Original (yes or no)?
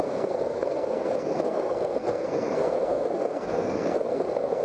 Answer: no